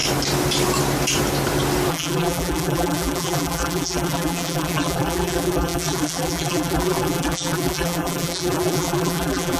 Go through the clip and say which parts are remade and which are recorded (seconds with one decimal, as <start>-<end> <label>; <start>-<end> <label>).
0.0-1.9 recorded; 1.9-9.6 remade